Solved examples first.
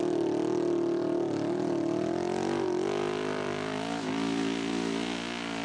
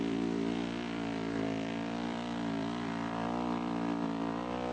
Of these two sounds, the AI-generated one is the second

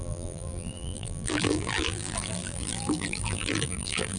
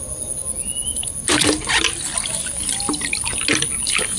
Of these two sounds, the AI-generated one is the first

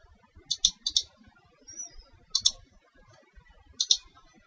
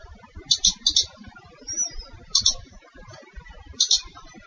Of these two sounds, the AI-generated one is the second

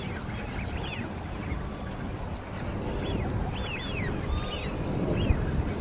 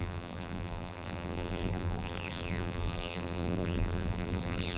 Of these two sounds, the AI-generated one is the second